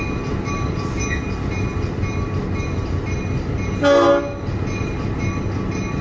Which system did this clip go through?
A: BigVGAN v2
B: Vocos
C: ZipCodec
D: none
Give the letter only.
D